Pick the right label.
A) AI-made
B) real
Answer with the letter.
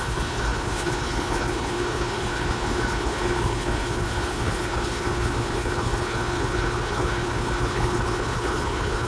A